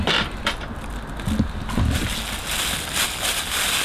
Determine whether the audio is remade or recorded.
recorded